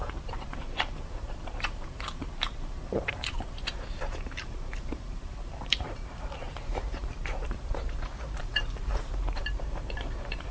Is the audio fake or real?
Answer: fake